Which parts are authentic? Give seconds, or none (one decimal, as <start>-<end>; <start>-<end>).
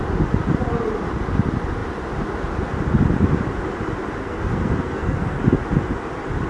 0.0-4.2; 5.4-6.5